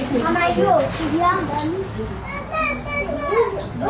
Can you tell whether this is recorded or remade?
recorded